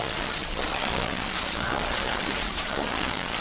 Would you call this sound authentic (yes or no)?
no